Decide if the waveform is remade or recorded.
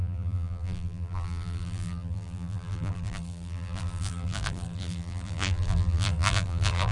remade